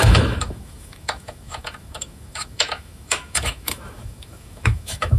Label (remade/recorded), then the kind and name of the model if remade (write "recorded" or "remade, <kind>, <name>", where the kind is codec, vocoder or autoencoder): remade, autoencoder, DAC-VAE